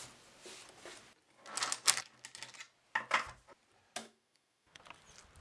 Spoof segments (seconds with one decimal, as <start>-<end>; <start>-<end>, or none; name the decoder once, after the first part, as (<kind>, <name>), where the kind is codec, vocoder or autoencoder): 4.0-4.8 (autoencoder, DAC-VAE)